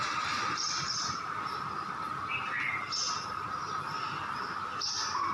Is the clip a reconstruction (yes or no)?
no